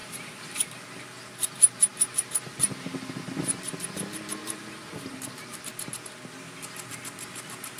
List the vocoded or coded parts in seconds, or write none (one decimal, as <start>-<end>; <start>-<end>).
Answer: 0.0-0.8; 4.4-5.6